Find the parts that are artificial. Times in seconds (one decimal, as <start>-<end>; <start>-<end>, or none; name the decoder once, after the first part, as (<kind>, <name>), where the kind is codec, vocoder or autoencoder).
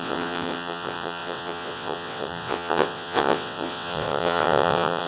0.0-5.1 (vocoder, WaveNeXt)